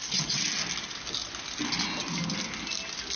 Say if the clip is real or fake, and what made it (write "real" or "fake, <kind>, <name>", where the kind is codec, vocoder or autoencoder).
real